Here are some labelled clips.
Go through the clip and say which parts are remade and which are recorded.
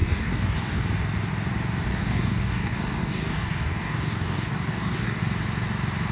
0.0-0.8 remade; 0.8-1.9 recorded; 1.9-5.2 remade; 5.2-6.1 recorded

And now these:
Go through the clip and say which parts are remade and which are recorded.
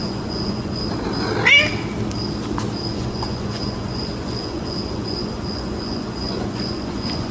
0.0-0.8 remade; 0.8-2.9 recorded; 2.9-7.3 remade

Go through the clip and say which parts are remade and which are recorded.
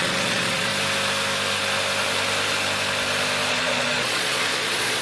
0.0-0.7 remade; 0.7-3.5 recorded; 3.5-5.0 remade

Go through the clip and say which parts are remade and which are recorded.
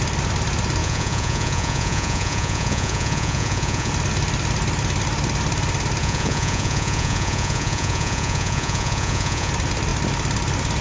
0.0-0.8 recorded; 0.8-3.9 remade; 3.9-6.0 recorded; 6.0-9.5 remade; 9.5-10.8 recorded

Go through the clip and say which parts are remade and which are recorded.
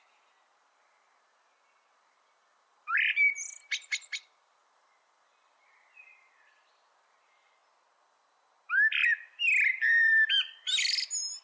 0.0-7.6 remade; 7.6-9.3 recorded; 9.3-11.4 remade